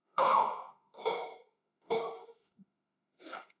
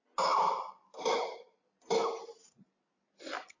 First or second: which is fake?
first